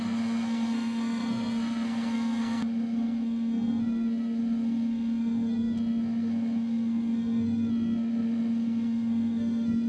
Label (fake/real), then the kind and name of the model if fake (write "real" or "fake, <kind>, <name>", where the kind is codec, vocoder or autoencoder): fake, codec, SNAC